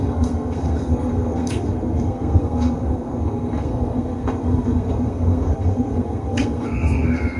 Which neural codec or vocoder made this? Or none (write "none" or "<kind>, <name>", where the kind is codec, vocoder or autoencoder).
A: codec, SNAC